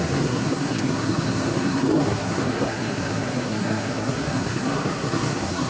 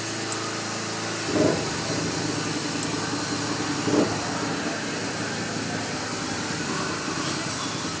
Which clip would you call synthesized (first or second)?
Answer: first